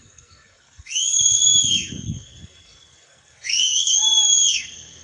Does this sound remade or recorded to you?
remade